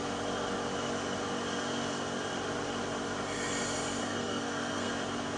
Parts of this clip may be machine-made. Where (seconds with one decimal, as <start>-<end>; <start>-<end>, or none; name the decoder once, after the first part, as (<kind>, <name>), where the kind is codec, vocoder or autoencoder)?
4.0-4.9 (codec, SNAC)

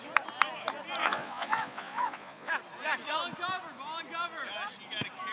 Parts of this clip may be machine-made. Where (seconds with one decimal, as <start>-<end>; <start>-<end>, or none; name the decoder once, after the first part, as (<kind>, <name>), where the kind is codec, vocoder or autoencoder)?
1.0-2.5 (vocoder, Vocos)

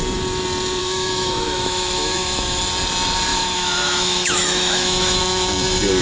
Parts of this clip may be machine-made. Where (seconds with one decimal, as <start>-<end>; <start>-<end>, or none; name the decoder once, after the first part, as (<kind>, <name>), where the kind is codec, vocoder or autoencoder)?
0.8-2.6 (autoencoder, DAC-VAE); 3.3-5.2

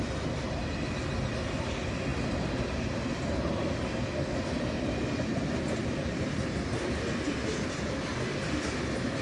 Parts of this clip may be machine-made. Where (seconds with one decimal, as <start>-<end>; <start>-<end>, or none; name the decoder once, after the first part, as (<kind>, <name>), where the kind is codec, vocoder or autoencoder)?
none